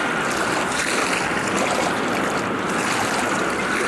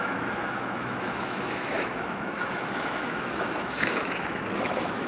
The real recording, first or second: first